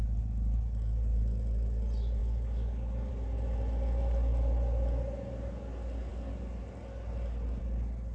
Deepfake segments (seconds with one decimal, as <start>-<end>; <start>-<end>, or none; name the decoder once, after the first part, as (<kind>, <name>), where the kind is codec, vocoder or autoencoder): 2.2-3.1 (codec, DAC)

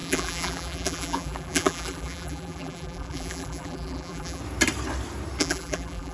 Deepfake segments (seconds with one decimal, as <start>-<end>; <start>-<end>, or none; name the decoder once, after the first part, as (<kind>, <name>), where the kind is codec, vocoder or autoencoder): 0.0-4.4 (vocoder, BigVGAN v2); 5.4-6.1